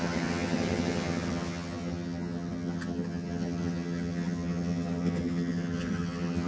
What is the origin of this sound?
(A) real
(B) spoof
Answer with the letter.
B